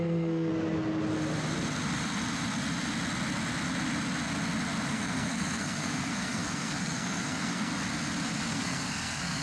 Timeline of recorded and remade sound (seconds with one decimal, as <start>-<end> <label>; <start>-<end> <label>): 0.0-0.5 remade; 0.5-4.9 recorded; 4.9-7.7 remade; 7.7-8.5 recorded; 8.5-9.4 remade

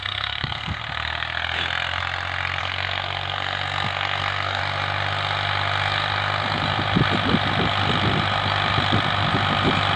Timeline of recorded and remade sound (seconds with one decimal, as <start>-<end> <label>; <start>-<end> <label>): 0.0-0.8 remade; 0.8-2.6 recorded; 2.6-4.6 remade; 4.6-10.0 recorded

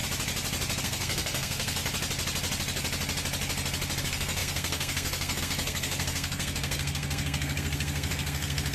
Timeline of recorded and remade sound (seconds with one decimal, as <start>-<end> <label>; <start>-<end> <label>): 0.0-0.8 recorded; 0.8-1.8 remade; 1.8-4.0 recorded; 4.0-8.7 remade

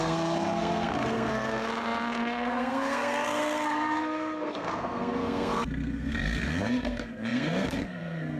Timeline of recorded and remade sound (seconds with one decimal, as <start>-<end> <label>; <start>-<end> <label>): 0.0-8.4 remade

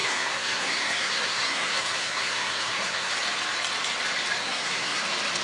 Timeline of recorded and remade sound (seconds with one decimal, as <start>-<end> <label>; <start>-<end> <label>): 0.0-3.1 remade; 3.1-4.4 recorded; 4.4-5.0 remade; 5.0-5.4 recorded

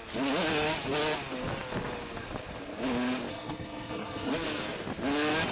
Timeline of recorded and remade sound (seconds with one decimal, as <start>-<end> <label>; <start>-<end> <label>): 0.0-3.3 recorded; 3.3-4.3 remade; 4.3-5.5 recorded